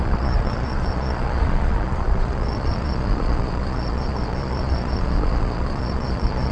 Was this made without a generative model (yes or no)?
no